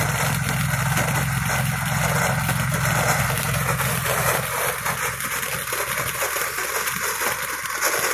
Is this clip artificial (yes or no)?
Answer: no